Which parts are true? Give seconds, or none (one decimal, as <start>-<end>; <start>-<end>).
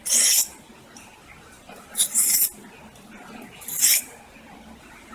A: 0.0-5.1